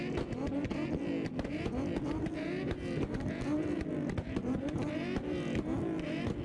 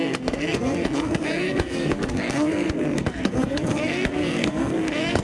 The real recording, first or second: first